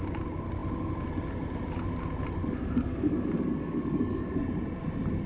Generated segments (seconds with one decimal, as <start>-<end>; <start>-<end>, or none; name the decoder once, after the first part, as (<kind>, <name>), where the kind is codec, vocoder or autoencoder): 2.4-4.4 (codec, DAC)